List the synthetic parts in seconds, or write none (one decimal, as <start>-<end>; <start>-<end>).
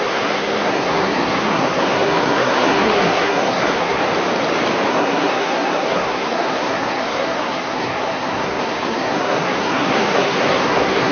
0.0-4.0; 4.9-11.1